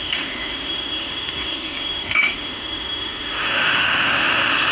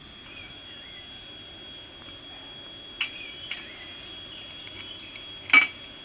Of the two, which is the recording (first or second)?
second